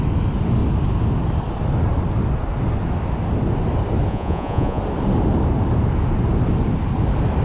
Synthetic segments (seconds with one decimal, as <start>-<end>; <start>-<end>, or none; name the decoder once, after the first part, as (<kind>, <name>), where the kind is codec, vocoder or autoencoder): 4.1-4.8 (vocoder, Vocos)